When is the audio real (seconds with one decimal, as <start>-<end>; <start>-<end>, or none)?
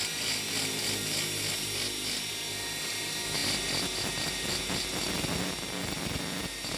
0.0-6.8